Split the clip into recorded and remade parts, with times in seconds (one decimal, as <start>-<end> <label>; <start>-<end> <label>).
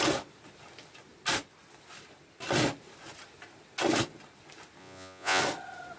0.0-4.8 recorded; 4.8-5.4 remade; 5.4-6.0 recorded